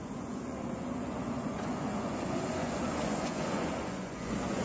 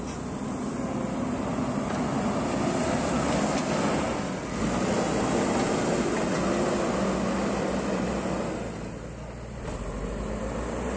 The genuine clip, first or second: second